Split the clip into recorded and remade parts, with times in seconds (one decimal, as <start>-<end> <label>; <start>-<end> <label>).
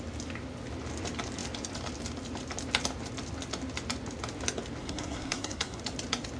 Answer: 0.0-4.8 recorded; 4.8-5.8 remade; 5.8-6.4 recorded